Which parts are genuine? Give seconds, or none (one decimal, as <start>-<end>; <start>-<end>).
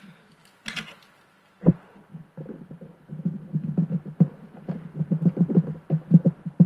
0.0-6.7